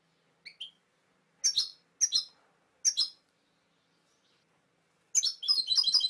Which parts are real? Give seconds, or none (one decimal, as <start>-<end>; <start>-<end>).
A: 0.0-6.1